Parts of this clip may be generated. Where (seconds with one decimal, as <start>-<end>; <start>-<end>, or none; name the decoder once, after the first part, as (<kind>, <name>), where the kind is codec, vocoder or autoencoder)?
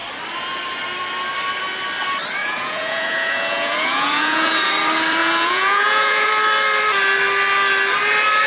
2.4-4.7 (vocoder, Vocos); 5.2-6.3